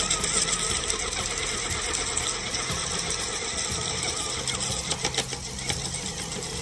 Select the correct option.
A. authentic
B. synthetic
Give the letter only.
A